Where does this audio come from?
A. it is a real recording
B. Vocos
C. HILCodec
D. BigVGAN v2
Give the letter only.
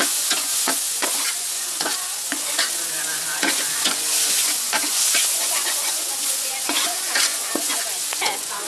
B